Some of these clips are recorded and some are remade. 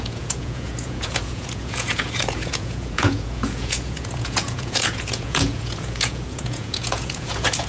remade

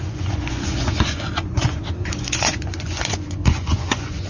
remade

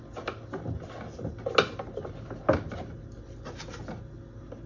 recorded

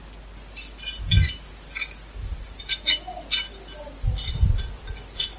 recorded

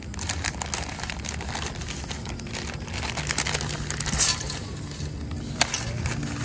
recorded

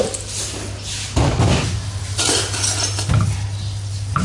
recorded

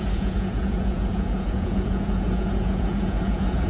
remade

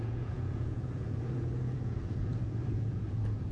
remade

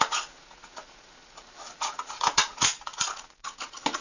remade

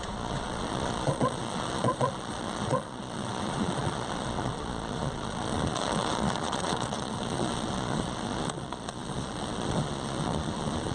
remade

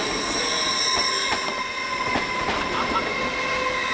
recorded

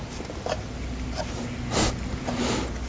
recorded